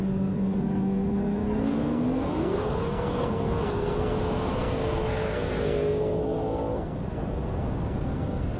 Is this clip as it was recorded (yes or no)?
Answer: no